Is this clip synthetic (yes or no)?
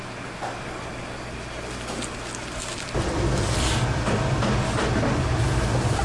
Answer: no